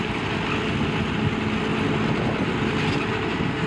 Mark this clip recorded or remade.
recorded